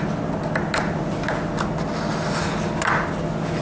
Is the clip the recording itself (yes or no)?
yes